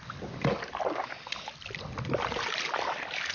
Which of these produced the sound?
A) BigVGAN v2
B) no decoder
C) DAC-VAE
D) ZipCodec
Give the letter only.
B